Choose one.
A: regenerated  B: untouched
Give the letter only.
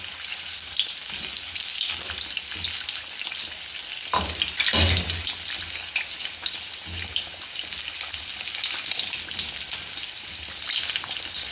B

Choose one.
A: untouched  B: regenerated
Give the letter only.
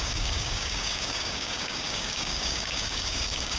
B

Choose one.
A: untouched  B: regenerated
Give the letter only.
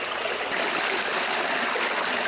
A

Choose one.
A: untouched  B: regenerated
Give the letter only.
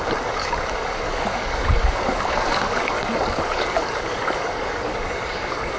B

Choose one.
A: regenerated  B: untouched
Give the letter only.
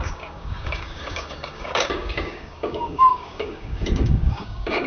A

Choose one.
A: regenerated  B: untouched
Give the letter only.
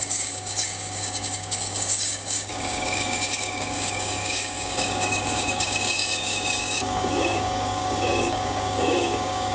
A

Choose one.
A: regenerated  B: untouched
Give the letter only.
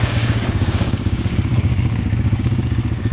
A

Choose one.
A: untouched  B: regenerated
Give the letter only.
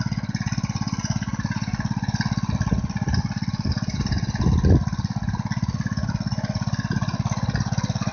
A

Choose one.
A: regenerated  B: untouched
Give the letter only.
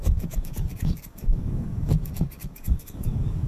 A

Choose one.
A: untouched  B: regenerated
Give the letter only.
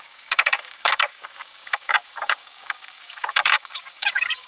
B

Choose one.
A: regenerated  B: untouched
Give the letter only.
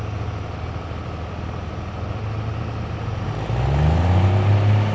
B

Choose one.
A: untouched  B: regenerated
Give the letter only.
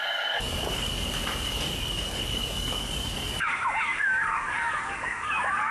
B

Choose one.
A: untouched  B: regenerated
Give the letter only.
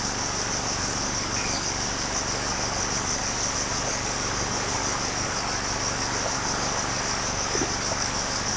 B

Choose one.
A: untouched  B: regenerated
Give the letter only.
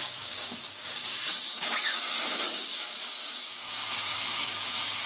B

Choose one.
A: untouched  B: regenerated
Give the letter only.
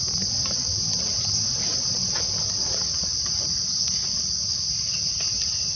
A